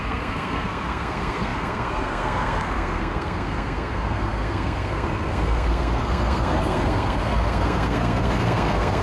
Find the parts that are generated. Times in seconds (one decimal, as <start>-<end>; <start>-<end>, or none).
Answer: 0.0-9.0